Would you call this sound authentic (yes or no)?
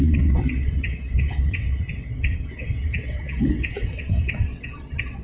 no